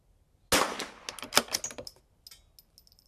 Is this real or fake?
real